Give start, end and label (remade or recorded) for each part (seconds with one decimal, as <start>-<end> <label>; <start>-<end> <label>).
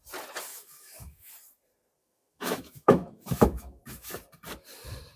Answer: 0.0-0.5 recorded; 0.5-1.3 remade; 1.3-2.0 recorded; 2.0-4.1 remade; 4.1-5.2 recorded